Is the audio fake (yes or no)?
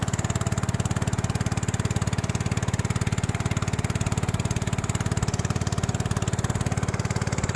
no